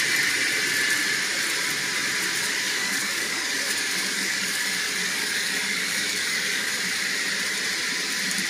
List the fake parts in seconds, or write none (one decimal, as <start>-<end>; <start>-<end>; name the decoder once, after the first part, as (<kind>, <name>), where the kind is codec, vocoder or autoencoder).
2.4-6.8 (codec, DAC)